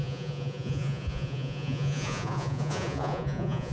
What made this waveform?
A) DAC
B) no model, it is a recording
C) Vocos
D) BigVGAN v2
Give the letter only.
C